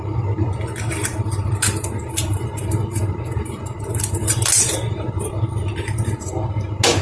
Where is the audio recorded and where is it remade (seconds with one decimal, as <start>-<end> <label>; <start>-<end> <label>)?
0.0-1.1 recorded; 1.1-5.3 remade; 5.3-7.0 recorded